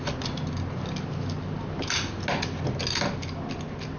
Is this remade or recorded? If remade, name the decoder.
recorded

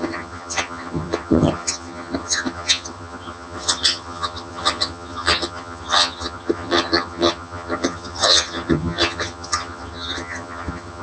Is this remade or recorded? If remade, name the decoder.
remade, vocoder, HiFi-GAN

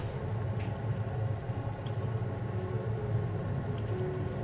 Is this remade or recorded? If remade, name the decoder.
recorded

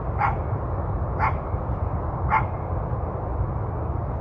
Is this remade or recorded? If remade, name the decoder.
recorded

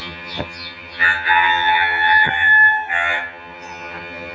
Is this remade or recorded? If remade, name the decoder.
remade, vocoder, HiFi-GAN